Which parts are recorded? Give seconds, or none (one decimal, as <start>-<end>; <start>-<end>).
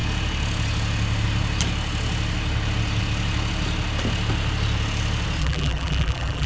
0.0-5.4